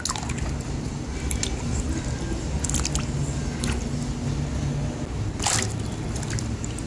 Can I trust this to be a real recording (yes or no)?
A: yes